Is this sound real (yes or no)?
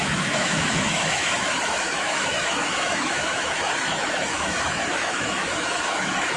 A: no